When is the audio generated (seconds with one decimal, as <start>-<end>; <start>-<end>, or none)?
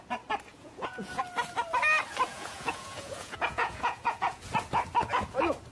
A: 0.5-1.2; 2.3-4.4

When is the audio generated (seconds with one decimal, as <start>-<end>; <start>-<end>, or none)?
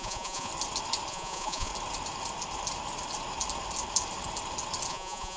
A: 0.0-0.5; 1.1-1.7; 4.9-5.4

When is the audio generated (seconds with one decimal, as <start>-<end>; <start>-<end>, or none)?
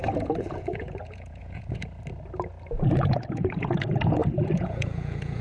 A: 0.0-1.8; 2.7-5.4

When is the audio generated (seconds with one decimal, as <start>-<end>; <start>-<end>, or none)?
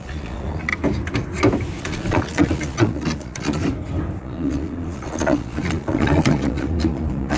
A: 0.0-0.7; 1.8-3.6; 4.2-7.4